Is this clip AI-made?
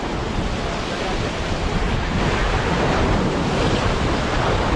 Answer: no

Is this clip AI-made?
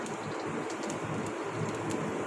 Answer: no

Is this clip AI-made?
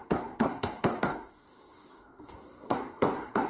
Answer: yes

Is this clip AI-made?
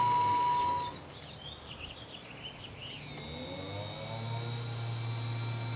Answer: no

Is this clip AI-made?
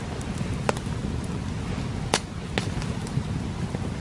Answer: no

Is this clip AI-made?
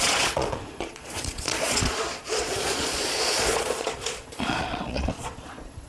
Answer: yes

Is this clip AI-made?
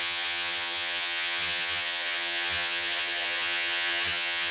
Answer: yes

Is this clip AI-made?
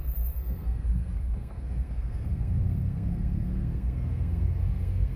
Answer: yes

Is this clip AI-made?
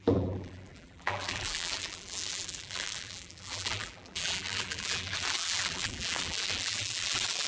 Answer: yes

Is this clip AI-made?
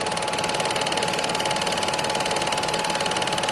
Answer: no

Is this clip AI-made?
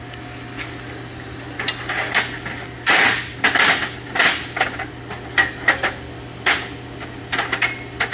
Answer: no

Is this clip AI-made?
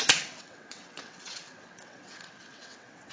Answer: yes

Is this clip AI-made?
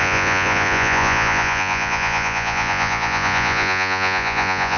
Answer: yes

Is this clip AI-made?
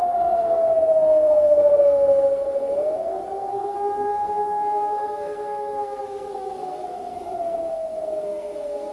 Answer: yes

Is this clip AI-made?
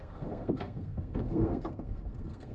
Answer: yes